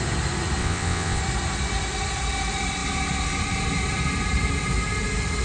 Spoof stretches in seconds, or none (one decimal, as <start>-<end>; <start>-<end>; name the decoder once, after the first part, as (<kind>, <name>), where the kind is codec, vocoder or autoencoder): 0.6-1.2 (vocoder, WaveNeXt)